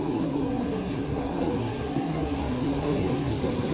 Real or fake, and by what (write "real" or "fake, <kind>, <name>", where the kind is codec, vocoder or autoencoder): fake, codec, SNAC